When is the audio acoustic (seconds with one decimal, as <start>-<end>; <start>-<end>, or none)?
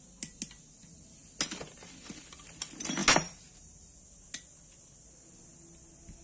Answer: 0.0-6.2